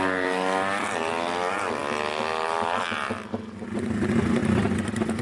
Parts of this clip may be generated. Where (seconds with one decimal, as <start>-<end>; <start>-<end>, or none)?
none